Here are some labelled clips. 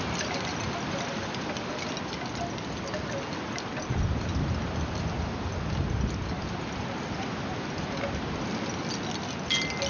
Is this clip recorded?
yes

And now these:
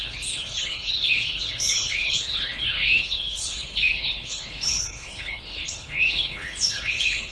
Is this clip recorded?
no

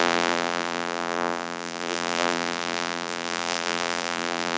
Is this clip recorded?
no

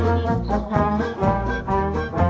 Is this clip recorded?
no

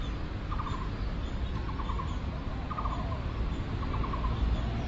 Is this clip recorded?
yes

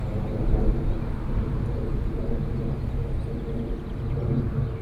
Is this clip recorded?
yes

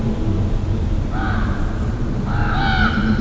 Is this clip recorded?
yes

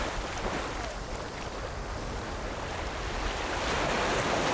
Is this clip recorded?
yes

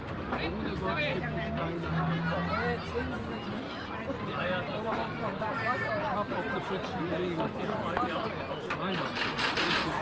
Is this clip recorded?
yes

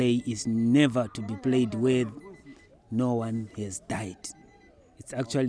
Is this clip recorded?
yes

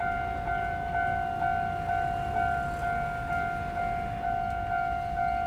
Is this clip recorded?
yes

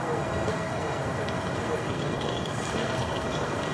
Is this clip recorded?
no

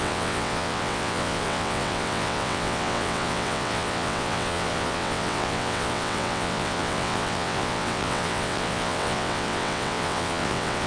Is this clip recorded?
no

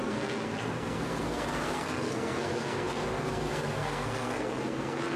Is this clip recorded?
no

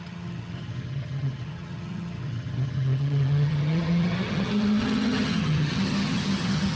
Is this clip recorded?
no